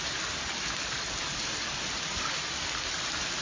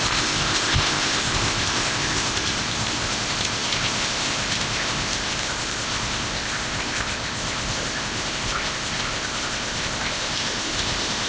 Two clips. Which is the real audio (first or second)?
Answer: first